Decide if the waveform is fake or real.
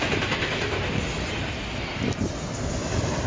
real